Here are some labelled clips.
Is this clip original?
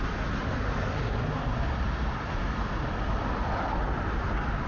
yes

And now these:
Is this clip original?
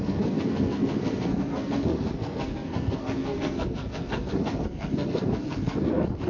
no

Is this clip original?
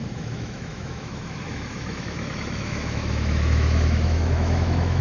no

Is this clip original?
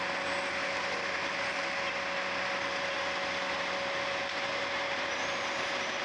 yes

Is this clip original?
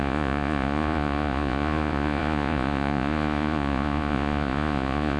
no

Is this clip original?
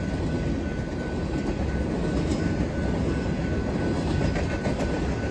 yes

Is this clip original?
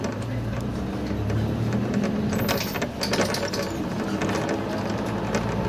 yes